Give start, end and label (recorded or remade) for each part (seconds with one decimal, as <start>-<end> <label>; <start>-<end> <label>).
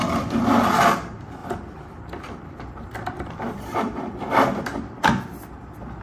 0.0-0.8 remade; 0.8-1.4 recorded; 1.4-5.0 remade; 5.0-6.0 recorded